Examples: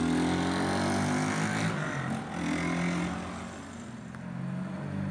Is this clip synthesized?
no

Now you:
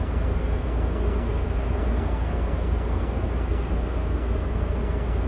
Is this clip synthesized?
yes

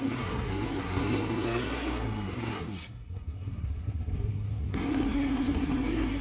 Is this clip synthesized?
yes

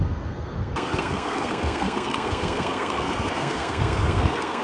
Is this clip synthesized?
yes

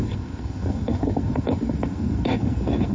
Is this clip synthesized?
yes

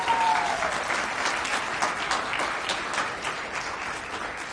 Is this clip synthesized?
no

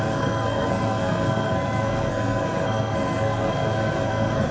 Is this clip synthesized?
yes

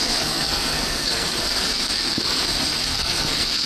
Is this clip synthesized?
yes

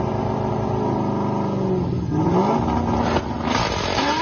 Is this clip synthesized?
no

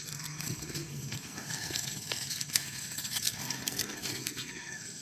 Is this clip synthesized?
yes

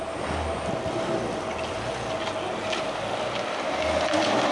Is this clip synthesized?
no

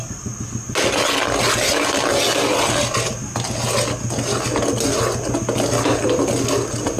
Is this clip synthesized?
no